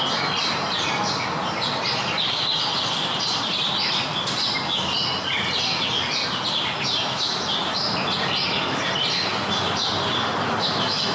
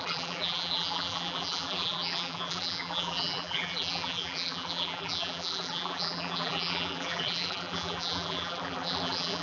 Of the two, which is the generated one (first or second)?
second